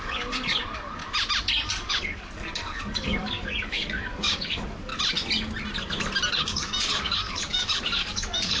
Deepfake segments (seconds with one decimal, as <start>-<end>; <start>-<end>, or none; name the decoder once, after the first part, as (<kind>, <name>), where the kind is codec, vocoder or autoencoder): 0.0-1.0 (codec, DAC); 1.9-4.9; 6.3-8.6